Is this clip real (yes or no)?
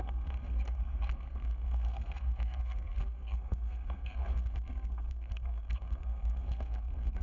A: no